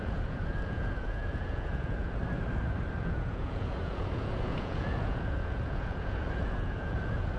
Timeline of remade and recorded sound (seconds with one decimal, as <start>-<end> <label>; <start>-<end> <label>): 0.0-2.2 remade; 2.2-3.0 recorded; 3.0-7.4 remade